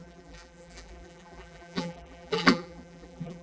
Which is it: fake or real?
fake